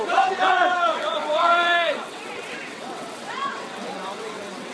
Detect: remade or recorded remade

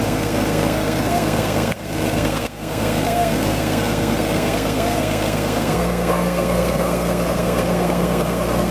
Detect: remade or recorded remade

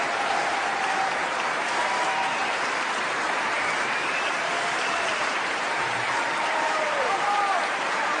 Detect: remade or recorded remade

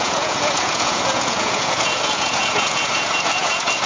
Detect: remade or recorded remade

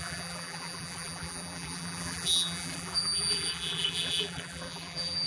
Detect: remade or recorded remade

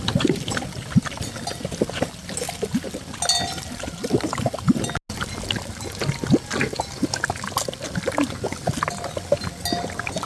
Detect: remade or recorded recorded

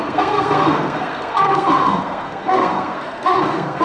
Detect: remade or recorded remade